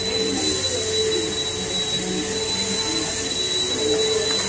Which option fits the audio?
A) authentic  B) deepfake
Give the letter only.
A